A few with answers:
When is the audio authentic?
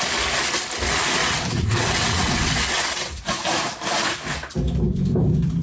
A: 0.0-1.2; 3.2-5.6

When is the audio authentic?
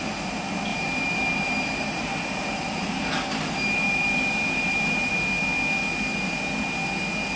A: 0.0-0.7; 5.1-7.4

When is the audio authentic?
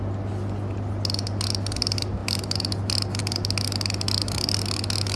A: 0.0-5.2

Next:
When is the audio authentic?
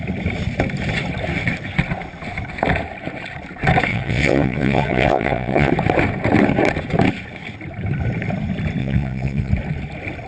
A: 0.0-3.9; 5.7-8.8; 9.5-10.3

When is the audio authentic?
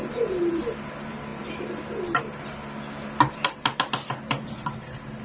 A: 0.0-5.2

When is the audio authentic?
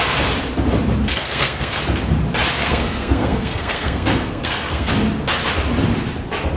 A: 0.0-1.1; 1.8-2.6; 4.9-6.6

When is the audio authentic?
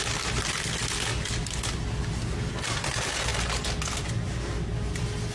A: 0.0-5.3